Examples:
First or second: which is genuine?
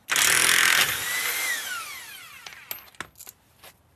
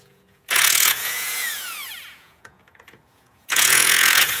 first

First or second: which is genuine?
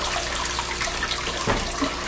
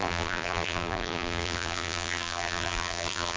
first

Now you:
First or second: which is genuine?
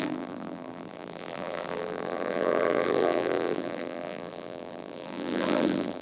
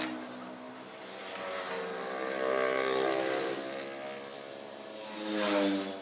second